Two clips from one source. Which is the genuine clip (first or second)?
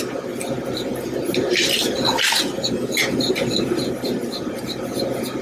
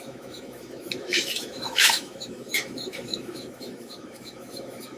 first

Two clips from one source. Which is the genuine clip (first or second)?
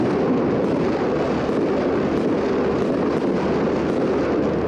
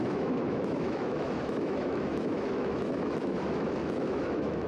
first